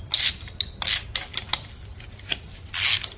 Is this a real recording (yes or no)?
yes